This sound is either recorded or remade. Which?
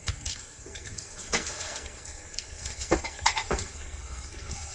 remade